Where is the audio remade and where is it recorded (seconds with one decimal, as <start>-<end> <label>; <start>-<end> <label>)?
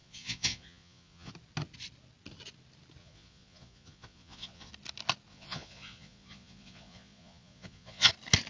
0.0-1.3 remade; 1.3-3.0 recorded; 3.0-4.7 remade; 4.7-5.3 recorded; 5.3-8.1 remade; 8.1-8.5 recorded